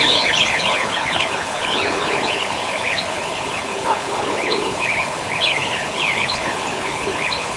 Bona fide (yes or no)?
no